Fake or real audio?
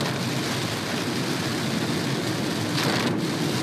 real